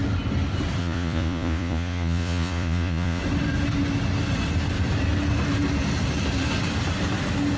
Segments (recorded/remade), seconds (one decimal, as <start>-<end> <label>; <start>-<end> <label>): 0.0-0.8 recorded; 0.8-3.2 remade; 3.2-7.6 recorded